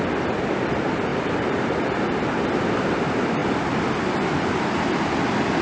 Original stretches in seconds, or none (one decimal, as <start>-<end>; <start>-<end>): 0.0-1.1; 1.7-5.6